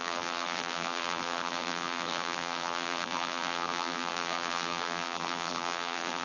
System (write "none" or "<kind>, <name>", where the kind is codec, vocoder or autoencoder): vocoder, BigVGAN v2